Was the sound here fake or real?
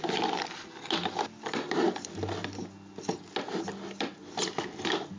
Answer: real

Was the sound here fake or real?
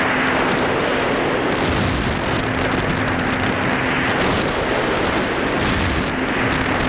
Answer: real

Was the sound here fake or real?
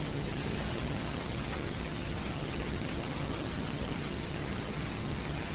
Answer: fake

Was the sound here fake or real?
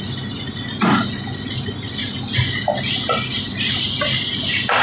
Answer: real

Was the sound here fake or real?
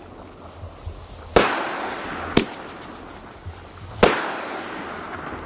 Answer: real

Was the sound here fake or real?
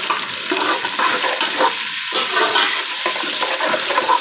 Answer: real